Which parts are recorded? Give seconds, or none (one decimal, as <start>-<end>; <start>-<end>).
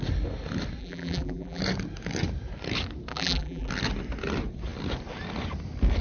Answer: 0.0-0.8; 1.6-3.1; 3.7-6.0